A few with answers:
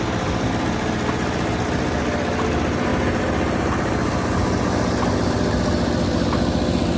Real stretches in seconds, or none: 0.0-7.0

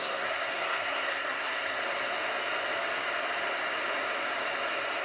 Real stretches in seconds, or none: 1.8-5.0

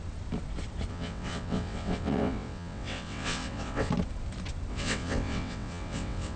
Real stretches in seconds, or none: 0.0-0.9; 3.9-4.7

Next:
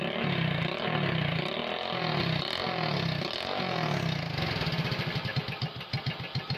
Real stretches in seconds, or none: 0.0-6.6